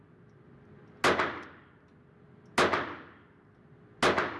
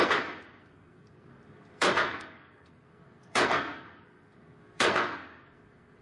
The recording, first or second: first